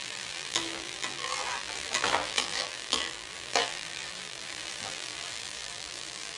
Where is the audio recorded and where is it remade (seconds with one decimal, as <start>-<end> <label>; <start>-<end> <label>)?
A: 0.0-6.4 remade